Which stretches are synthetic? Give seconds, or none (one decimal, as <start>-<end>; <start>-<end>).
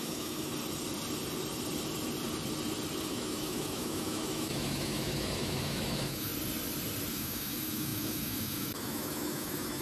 0.0-0.5; 3.1-6.3; 7.1-9.8